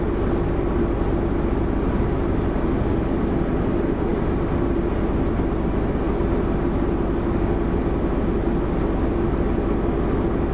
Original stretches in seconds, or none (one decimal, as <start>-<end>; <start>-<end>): 0.0-10.5